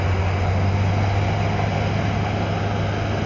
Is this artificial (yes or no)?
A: no